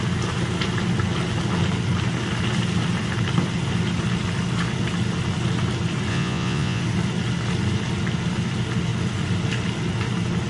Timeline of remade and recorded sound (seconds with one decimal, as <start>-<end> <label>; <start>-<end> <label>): 0.0-6.1 recorded; 6.1-6.8 remade; 6.8-10.5 recorded